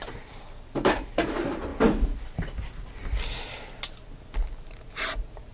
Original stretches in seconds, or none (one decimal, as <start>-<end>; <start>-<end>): 1.7-5.0